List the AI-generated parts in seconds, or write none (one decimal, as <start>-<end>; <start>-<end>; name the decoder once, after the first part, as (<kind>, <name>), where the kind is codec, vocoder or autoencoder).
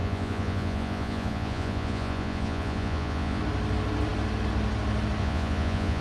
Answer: 0.0-3.4 (vocoder, Vocos); 5.2-6.0